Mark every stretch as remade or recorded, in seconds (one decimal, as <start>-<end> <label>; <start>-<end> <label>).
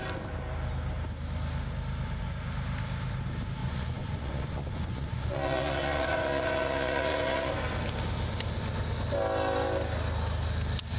0.0-3.6 recorded; 3.6-7.5 remade; 7.5-11.0 recorded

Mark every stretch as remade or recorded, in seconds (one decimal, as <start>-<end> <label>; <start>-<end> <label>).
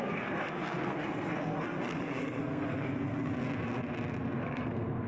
0.0-3.3 remade; 3.3-4.4 recorded; 4.4-5.1 remade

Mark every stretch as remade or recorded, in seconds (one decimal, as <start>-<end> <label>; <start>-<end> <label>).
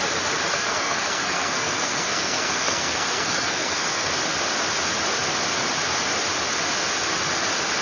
0.0-0.5 recorded; 0.5-4.1 remade; 4.1-7.8 recorded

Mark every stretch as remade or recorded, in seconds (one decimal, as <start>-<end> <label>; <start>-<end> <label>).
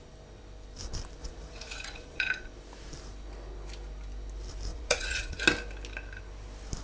0.0-1.2 recorded; 1.2-2.3 remade; 2.3-4.7 recorded; 4.7-5.4 remade; 5.4-6.8 recorded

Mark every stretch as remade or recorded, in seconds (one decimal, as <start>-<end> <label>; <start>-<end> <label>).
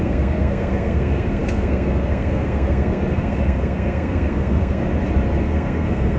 0.0-4.8 remade; 4.8-5.4 recorded; 5.4-6.2 remade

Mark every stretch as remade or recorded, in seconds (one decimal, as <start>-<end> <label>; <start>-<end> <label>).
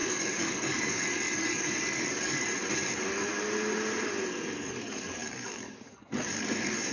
0.0-2.5 remade; 2.5-4.7 recorded; 4.7-6.9 remade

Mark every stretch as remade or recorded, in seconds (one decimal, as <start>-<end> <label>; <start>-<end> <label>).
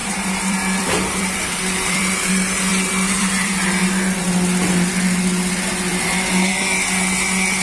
0.0-2.3 remade; 2.3-7.6 recorded